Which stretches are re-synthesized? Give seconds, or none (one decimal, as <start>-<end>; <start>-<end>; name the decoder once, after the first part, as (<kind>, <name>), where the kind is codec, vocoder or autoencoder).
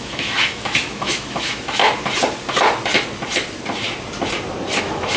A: 0.0-1.8 (autoencoder, DAC-VAE); 4.8-5.2